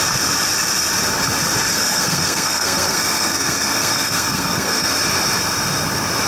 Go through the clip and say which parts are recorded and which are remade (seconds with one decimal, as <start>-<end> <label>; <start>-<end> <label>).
0.0-1.7 recorded; 1.7-4.9 remade; 4.9-6.3 recorded